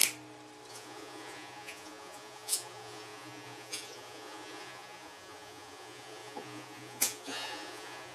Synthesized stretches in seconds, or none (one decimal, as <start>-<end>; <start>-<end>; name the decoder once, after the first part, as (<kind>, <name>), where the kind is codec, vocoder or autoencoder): 0.7-8.1 (vocoder, Vocos)